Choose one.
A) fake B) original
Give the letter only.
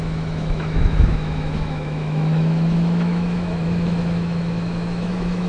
A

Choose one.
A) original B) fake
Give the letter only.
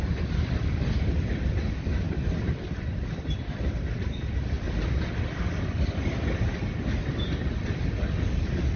A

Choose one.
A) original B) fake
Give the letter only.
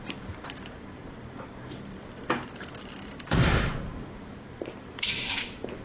B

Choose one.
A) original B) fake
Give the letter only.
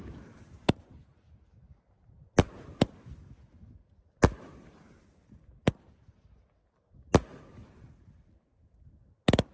A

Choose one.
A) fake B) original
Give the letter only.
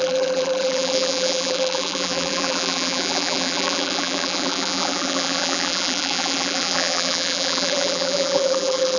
A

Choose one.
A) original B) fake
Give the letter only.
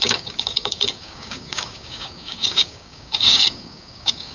B